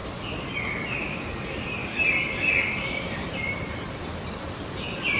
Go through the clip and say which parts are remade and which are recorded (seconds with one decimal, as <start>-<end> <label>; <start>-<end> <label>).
0.0-5.2 recorded